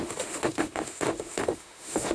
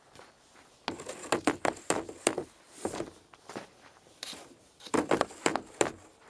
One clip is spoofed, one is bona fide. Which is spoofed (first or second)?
first